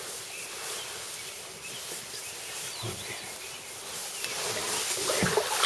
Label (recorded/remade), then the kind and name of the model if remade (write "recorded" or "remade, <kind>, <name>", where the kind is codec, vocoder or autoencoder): recorded